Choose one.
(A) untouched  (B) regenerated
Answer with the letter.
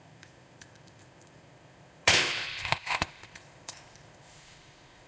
B